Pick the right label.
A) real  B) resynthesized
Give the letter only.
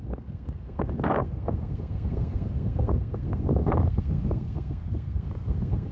B